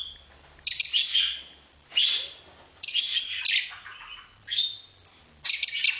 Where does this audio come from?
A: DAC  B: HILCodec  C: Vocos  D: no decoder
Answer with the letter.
D